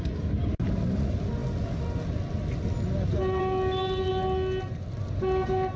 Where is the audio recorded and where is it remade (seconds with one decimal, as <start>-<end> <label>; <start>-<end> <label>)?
0.0-5.8 recorded